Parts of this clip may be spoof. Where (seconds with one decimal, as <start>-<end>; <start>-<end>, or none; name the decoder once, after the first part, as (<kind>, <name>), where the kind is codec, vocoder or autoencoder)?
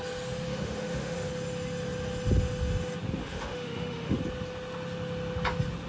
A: 0.5-1.3 (autoencoder, DAC-VAE); 3.2-4.2